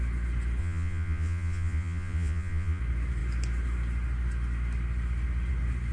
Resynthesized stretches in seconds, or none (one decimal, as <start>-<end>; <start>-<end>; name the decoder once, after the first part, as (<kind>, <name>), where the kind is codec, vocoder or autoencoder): 0.6-2.8 (vocoder, Vocos)